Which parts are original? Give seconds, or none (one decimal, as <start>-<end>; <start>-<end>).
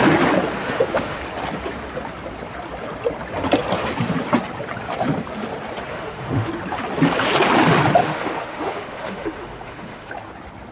0.0-0.6; 1.2-5.9; 6.5-8.0; 10.1-10.7